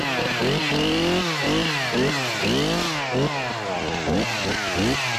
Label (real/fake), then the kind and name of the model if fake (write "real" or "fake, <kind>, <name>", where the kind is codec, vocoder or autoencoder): real